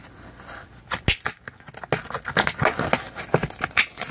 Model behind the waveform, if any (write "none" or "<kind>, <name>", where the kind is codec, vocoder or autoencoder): none